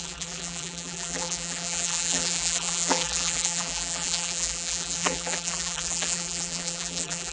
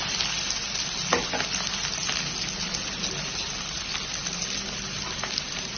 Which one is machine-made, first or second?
first